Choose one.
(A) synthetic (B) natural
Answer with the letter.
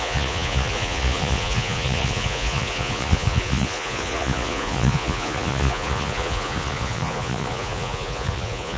A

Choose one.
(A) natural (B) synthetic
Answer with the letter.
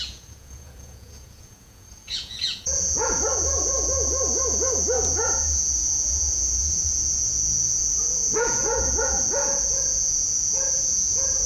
B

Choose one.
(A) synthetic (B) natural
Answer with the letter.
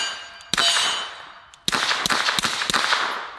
B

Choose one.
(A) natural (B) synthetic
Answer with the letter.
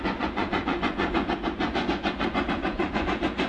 B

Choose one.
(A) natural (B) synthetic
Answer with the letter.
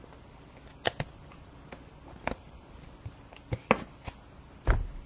A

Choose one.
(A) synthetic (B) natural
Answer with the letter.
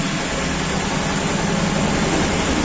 B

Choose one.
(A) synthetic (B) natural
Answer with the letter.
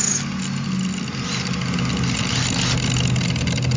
B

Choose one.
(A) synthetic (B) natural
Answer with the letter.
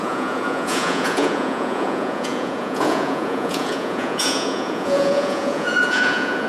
A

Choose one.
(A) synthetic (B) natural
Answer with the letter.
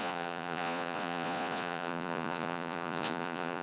A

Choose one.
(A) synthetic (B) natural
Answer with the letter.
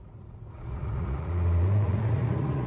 A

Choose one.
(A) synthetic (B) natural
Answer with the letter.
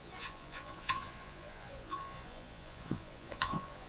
A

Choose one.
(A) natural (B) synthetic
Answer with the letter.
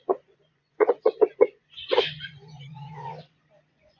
B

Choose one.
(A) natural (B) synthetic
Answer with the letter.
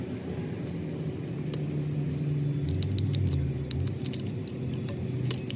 A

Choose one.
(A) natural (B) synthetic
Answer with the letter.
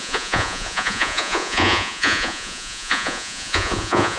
B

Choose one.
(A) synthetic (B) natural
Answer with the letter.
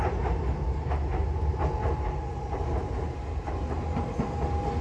B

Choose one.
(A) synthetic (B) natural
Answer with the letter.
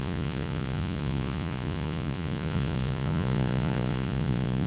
A